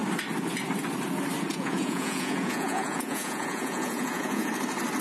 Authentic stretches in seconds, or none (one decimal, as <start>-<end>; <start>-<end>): 0.0-1.5; 4.5-5.0

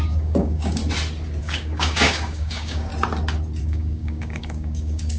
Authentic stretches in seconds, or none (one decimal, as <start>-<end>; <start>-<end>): 0.8-1.4; 2.9-3.6

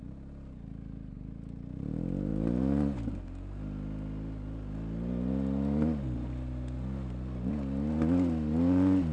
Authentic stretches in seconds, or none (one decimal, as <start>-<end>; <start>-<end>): 0.0-9.1

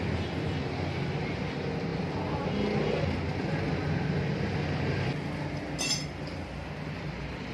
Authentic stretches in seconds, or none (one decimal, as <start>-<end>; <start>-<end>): 0.0-7.5

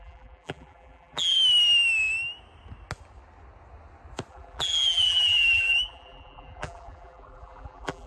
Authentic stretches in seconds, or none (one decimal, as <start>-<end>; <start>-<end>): 1.4-4.3

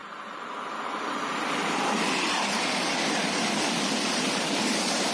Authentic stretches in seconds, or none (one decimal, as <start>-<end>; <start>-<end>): none